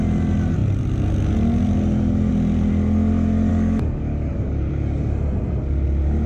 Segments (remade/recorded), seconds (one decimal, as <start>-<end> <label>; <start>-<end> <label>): 0.0-3.5 recorded; 3.5-4.7 remade; 4.7-6.3 recorded